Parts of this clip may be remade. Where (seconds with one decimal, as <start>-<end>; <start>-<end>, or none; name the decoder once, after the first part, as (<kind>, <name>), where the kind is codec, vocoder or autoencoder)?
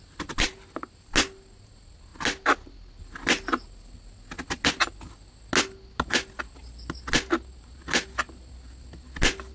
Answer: none